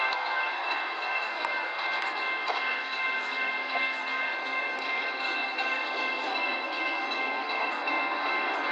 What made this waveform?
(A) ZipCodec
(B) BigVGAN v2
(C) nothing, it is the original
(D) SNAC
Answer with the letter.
D